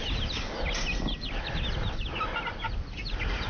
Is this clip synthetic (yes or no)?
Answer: no